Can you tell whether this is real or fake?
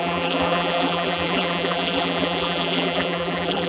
fake